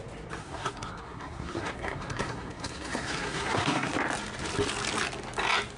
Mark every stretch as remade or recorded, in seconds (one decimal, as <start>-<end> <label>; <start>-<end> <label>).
0.0-0.4 recorded; 0.4-3.9 remade; 3.9-5.8 recorded